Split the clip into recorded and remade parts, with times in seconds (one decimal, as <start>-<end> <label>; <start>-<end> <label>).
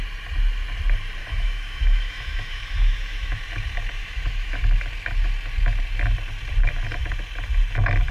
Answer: 0.0-1.2 recorded; 1.2-3.4 remade; 3.4-4.0 recorded; 4.0-4.6 remade; 4.6-8.1 recorded